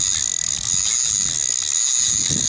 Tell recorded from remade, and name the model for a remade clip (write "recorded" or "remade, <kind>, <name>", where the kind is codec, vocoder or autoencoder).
recorded